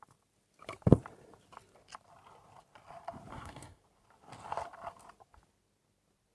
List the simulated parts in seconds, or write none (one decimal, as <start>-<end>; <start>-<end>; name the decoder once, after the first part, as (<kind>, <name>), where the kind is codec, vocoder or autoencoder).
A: 3.3-3.8 (codec, SNAC)